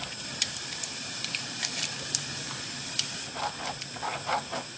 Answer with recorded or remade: remade